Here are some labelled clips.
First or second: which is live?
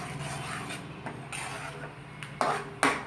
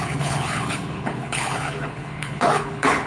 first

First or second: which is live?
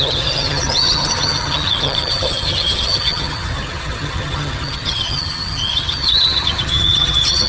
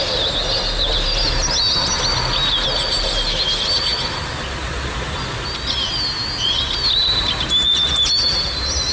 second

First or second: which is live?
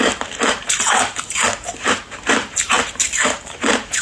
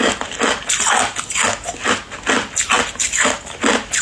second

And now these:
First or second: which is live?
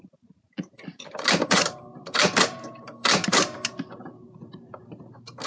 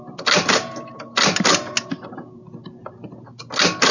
second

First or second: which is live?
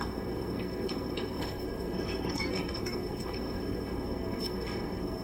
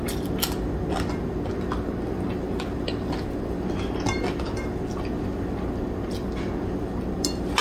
second